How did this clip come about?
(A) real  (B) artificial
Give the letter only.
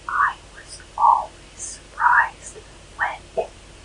A